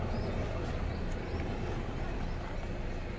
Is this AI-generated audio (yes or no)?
no